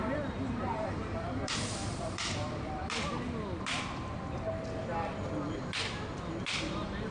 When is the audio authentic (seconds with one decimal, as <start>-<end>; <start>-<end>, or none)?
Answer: 2.8-6.6